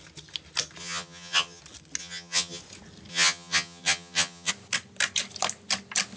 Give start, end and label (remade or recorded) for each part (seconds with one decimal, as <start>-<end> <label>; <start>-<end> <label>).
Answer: 0.0-0.8 recorded; 0.8-1.6 remade; 1.6-2.0 recorded; 2.0-2.6 remade; 2.6-3.1 recorded; 3.1-4.5 remade; 4.5-6.2 recorded

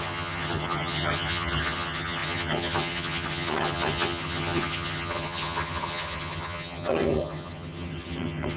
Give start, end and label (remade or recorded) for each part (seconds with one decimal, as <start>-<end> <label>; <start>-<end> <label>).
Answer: 0.0-8.6 remade